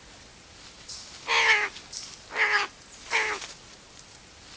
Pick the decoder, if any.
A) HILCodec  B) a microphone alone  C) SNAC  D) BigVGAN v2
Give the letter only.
B